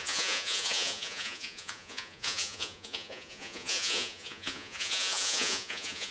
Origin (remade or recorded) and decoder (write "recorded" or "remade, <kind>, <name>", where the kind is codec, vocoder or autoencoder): remade, vocoder, Vocos